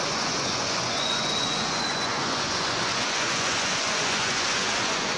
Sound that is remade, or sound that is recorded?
remade